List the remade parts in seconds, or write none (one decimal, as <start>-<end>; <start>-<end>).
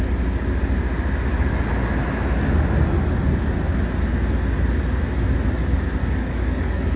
6.0-7.0